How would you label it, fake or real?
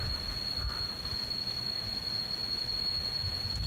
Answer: real